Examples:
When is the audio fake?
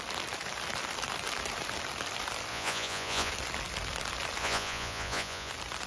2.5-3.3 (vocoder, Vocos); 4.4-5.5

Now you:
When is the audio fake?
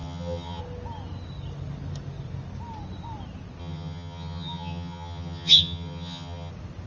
0.0-0.6 (vocoder, HiFi-GAN); 3.6-6.5